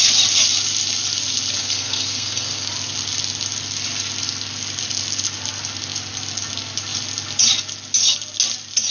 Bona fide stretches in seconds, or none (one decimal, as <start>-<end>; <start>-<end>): 0.0-1.6; 2.7-8.9